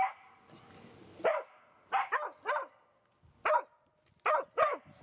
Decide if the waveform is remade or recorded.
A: recorded